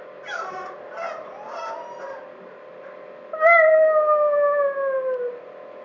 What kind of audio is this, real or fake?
real